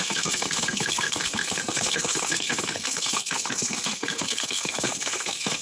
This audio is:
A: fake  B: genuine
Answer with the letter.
A